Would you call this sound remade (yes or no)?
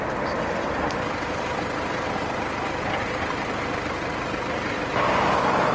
no